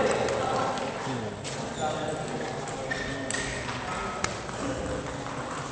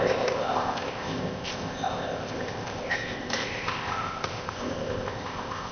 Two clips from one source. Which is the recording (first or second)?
first